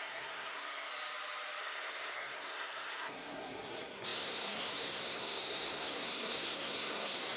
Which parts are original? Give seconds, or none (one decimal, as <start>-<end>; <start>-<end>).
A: 0.9-1.6